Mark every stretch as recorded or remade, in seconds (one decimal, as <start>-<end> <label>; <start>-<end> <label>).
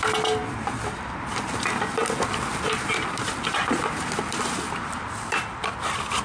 0.0-6.2 recorded